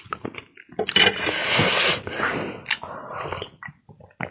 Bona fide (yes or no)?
yes